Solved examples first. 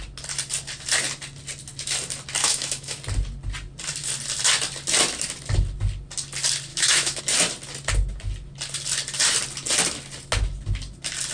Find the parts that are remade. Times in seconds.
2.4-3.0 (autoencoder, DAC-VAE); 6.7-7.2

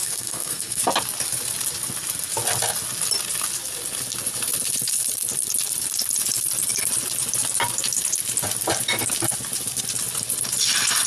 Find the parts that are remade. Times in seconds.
0.0-0.8 (codec, SNAC)

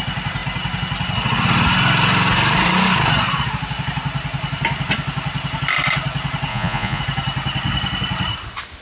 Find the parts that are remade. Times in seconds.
6.5-7.0 (vocoder, Vocos)

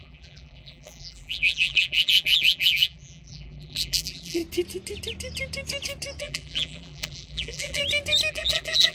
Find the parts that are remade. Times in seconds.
0.0-4.4 (vocoder, BigVGAN v2); 6.2-7.8; 8.3-8.9

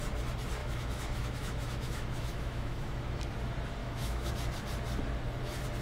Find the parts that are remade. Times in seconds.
0.6-3.2 (autoencoder, DAC-VAE); 3.8-4.3